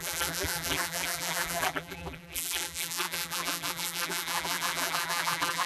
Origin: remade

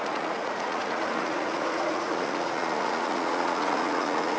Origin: remade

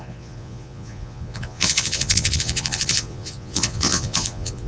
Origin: remade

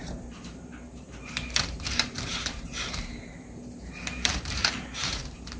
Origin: remade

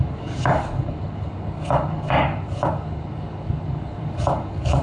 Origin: remade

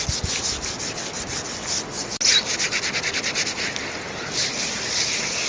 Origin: recorded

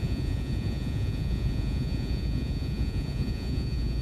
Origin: remade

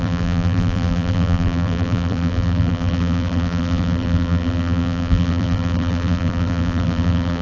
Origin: remade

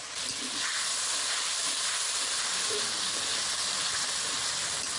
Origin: recorded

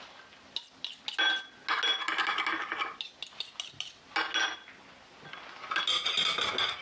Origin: recorded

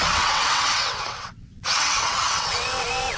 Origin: remade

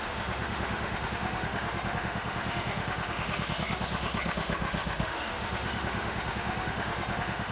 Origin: remade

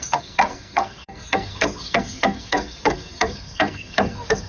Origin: remade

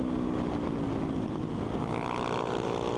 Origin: recorded